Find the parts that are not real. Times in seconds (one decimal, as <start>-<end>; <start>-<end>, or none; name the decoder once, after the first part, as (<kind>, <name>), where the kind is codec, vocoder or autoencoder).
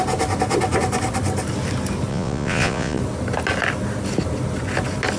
2.1-3.0 (vocoder, Vocos)